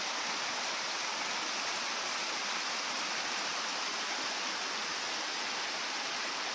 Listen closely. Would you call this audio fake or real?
real